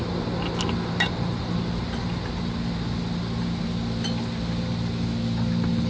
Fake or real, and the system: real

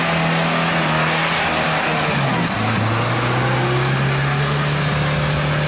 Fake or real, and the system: real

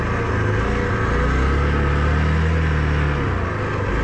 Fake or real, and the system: real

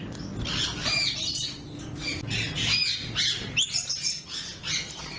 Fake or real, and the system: real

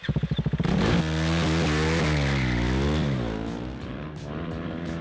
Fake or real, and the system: real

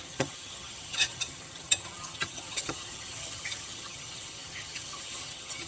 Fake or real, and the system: fake, vocoder, HiFi-GAN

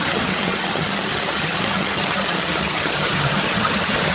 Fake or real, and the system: fake, vocoder, HiFi-GAN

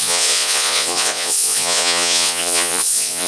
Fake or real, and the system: fake, vocoder, Vocos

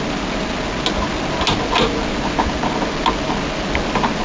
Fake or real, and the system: real